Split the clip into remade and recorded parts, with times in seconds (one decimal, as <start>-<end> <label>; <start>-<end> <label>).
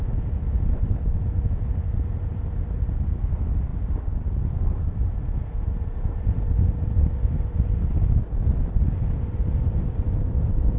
0.0-10.8 recorded